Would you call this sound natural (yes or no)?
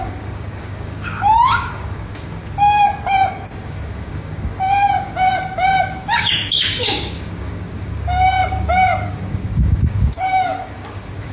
no